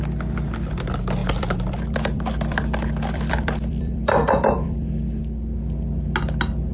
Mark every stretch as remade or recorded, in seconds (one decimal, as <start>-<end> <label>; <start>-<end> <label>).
0.0-1.2 recorded; 1.2-5.2 remade; 5.2-6.7 recorded